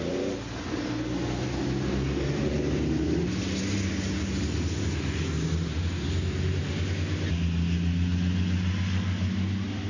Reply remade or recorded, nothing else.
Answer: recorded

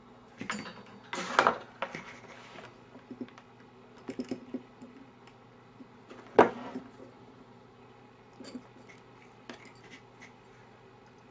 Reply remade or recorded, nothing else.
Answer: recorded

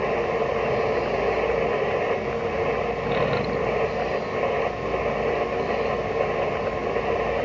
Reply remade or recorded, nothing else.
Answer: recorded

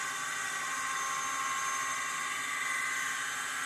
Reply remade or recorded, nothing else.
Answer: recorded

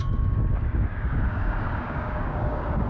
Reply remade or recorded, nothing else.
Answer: remade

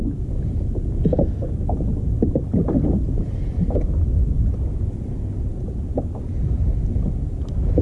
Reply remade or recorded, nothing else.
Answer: recorded